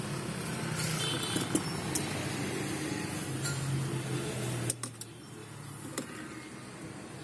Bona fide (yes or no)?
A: yes